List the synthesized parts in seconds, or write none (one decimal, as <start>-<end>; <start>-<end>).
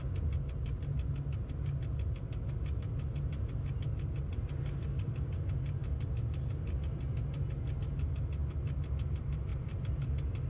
9.5-10.5